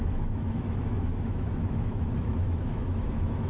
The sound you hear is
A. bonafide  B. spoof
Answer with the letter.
B